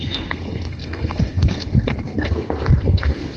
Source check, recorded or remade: remade